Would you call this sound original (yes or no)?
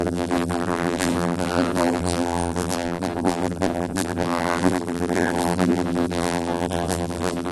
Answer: no